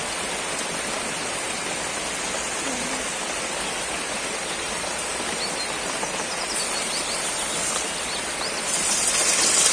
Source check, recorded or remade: recorded